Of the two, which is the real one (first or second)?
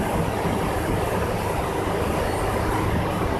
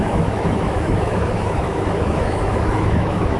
first